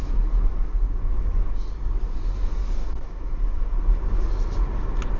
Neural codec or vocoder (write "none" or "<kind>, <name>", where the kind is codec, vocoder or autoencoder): none